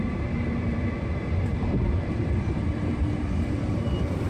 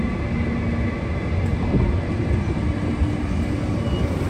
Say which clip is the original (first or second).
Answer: second